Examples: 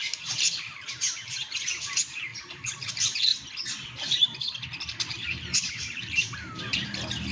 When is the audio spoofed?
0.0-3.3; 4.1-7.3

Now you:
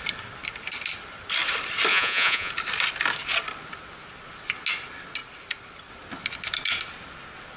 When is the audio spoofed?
1.9-2.5

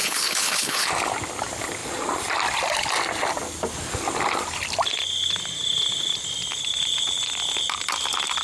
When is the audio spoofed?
0.0-0.9

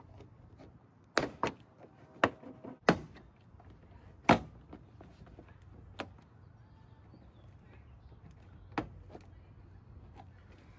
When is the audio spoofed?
none

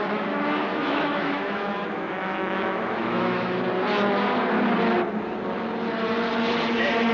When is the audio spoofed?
0.7-3.5

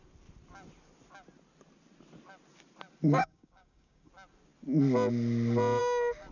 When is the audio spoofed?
3.2-4.1

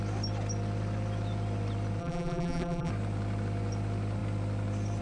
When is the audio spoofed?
2.0-2.9

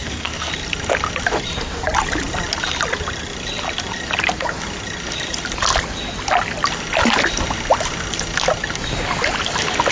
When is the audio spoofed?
0.0-0.5